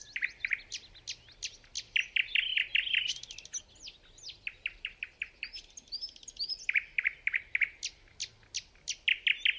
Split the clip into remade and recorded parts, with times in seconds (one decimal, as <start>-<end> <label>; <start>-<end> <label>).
0.0-9.6 recorded